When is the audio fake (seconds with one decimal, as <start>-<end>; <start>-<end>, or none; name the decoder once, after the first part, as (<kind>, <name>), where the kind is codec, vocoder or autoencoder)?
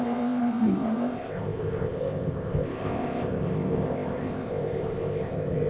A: 0.0-5.7 (codec, ZipCodec)